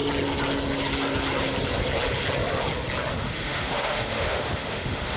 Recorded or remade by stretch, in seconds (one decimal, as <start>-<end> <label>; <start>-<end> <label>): 0.0-3.1 recorded; 3.1-5.2 remade